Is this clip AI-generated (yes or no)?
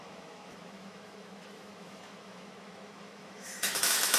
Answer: yes